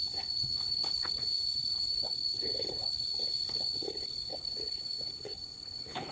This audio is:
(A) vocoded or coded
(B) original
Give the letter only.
A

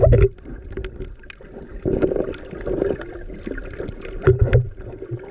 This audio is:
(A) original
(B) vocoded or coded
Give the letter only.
A